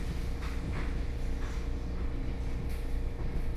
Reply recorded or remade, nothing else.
recorded